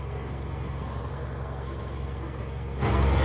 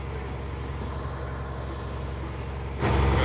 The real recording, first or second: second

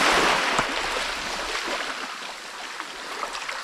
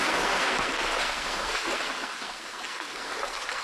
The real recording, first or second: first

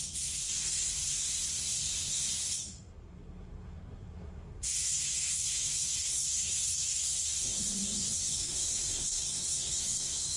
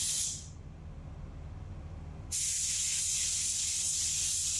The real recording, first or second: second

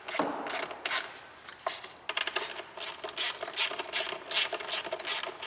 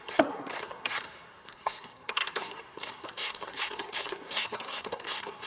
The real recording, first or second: first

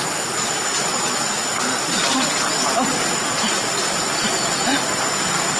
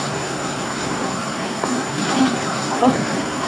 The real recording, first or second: first